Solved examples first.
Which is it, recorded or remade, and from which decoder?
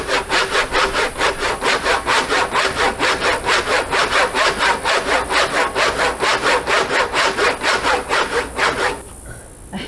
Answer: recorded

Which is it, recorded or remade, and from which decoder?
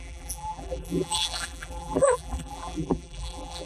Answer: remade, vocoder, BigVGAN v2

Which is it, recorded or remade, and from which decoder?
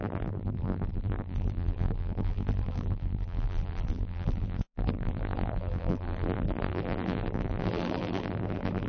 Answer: remade, vocoder, BigVGAN v2